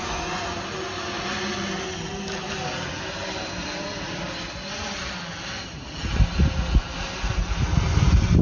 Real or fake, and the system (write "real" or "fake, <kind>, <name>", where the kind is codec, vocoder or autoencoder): real